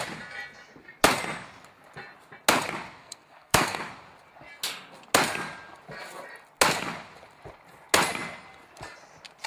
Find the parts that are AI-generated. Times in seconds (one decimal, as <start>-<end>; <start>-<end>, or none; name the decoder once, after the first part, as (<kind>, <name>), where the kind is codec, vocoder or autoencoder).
3.0-3.9 (codec, SNAC)